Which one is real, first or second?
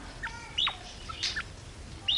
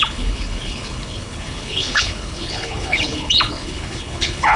first